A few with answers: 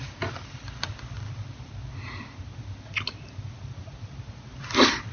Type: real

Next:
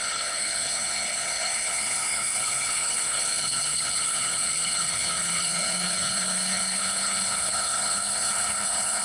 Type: fake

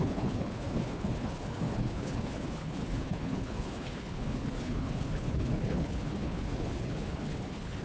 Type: fake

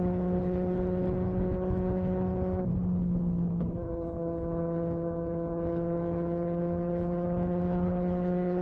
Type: fake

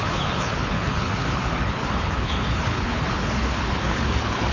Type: fake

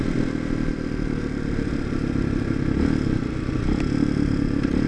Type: real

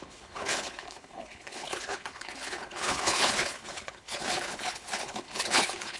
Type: fake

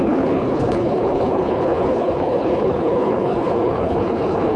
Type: fake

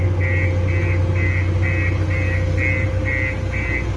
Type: real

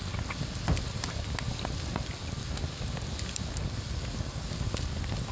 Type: real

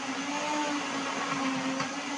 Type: real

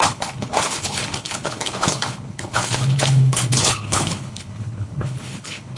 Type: fake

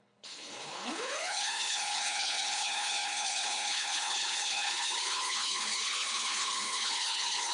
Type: fake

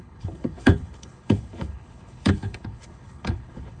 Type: fake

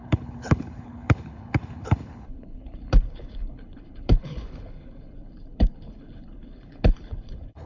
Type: fake